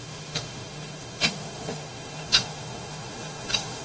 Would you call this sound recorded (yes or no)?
no